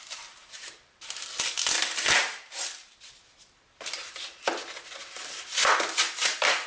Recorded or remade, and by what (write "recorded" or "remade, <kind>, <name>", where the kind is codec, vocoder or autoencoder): recorded